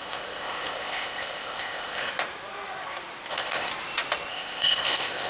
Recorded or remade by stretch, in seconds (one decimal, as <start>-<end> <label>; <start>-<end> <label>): 0.0-2.1 remade; 2.1-3.3 recorded; 3.3-3.7 remade; 3.7-4.3 recorded; 4.3-5.3 remade